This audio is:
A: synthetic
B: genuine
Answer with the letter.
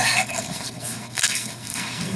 A